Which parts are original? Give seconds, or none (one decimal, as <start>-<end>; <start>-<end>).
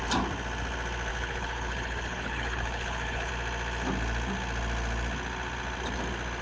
0.0-1.1; 3.3-6.4